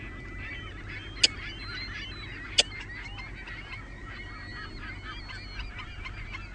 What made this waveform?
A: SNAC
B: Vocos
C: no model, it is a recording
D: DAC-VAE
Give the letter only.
C